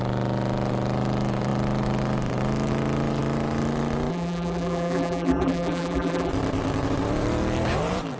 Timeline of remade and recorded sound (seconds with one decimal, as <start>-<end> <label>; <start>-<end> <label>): 0.0-4.1 recorded; 4.1-6.3 remade; 6.3-8.2 recorded